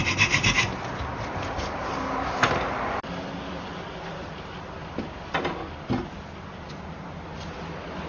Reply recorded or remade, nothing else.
recorded